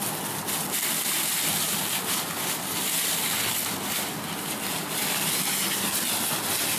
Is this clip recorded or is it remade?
recorded